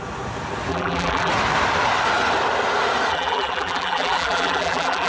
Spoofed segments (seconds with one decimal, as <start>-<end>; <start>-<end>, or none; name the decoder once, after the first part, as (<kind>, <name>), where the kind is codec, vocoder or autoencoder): 0.7-1.3 (vocoder, BigVGAN v2); 3.1-5.1